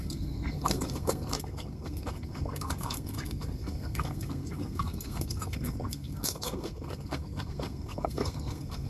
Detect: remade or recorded remade